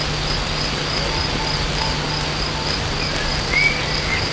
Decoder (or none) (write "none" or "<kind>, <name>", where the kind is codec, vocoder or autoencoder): none